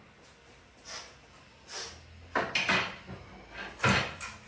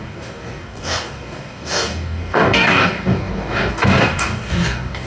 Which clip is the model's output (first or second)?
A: second